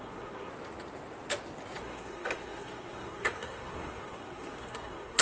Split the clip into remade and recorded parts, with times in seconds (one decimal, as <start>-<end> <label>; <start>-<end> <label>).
0.0-0.5 remade; 0.5-1.8 recorded; 1.8-5.2 remade